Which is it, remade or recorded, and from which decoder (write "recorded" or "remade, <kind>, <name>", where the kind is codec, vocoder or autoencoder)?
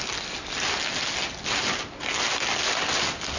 recorded